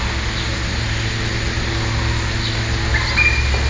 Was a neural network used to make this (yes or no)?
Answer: no